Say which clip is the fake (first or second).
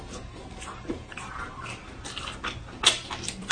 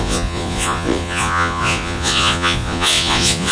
second